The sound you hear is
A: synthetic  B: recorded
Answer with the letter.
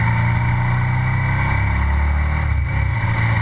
B